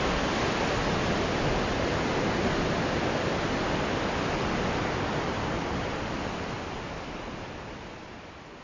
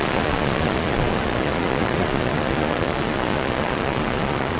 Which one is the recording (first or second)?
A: first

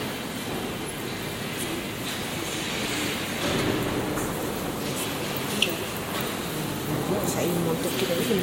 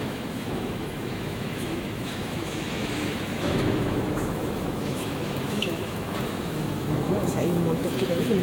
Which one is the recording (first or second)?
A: first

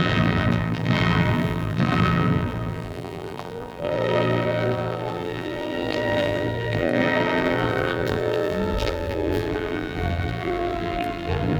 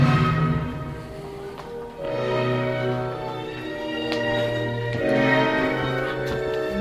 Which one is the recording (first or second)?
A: second